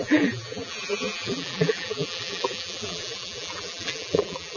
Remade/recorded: remade